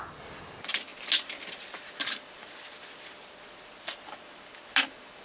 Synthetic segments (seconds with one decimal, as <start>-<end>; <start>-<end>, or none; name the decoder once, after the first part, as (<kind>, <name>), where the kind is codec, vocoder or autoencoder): none